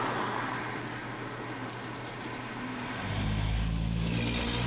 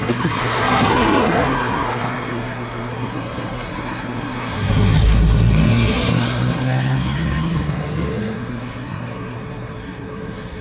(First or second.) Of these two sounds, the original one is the first